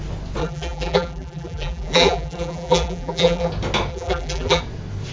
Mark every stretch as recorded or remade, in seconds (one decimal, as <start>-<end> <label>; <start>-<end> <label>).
0.0-0.4 recorded; 0.4-3.5 remade; 3.5-3.9 recorded; 3.9-4.6 remade; 4.6-5.1 recorded